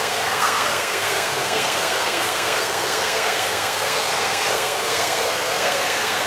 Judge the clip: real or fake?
fake